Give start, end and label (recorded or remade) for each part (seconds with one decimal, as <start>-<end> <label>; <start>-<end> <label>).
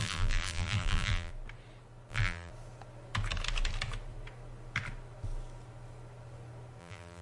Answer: 0.0-1.3 remade; 1.3-2.1 recorded; 2.1-2.5 remade; 2.5-6.8 recorded; 6.8-7.2 remade